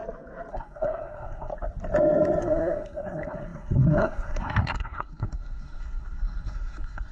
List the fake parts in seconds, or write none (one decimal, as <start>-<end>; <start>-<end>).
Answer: 0.5-1.5; 2.4-7.1